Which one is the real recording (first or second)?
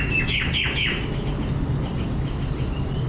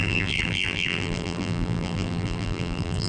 first